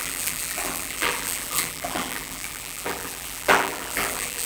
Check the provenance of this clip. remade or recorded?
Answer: remade